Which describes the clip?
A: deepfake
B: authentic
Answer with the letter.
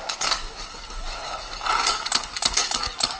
A